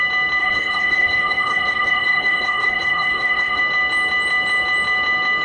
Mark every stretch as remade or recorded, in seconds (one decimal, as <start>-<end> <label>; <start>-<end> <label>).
0.0-0.4 recorded; 0.4-3.6 remade; 3.6-5.4 recorded